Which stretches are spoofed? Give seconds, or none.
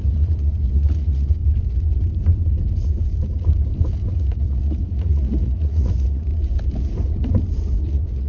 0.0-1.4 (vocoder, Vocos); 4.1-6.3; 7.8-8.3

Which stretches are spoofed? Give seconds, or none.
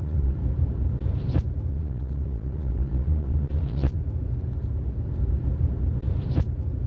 0.0-0.4 (vocoder, Vocos); 1.7-4.0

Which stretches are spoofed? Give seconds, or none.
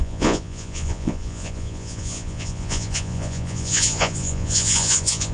0.0-5.3 (vocoder, Vocos)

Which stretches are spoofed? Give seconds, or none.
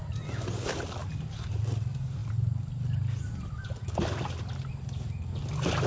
none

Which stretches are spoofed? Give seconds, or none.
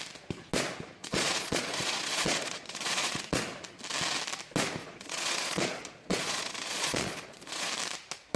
1.0-3.2 (vocoder, Vocos); 4.8-7.7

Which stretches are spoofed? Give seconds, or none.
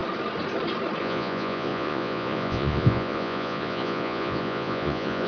1.0-5.3 (vocoder, Vocos)